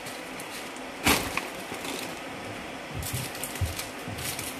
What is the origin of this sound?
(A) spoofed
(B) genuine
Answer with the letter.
B